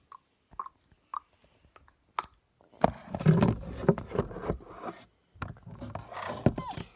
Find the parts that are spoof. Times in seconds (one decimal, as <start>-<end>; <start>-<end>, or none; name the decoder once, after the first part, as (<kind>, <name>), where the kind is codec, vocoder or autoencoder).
none